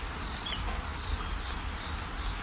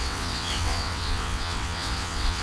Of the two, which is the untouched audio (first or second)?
first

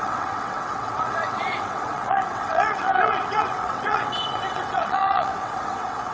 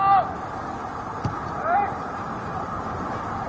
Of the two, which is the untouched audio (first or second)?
second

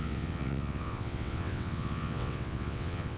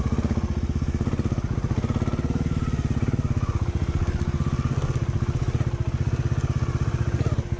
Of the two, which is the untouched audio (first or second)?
second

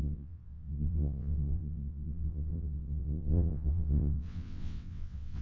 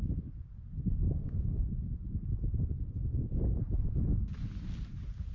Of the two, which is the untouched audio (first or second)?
second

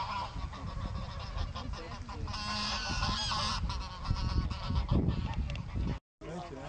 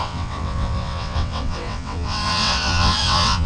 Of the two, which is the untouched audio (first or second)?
first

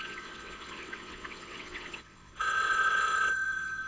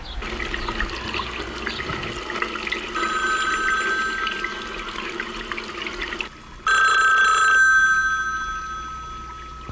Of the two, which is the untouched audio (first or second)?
second